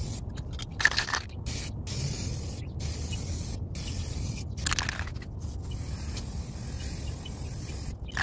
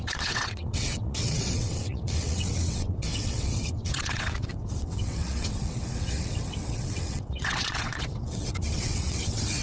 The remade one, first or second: second